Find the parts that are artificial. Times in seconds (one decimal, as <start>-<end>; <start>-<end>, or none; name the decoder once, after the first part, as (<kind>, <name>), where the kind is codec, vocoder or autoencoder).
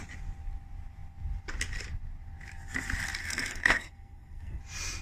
3.2-4.6 (codec, SNAC)